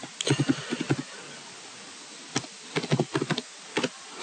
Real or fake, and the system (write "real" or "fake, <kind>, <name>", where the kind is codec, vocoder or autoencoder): real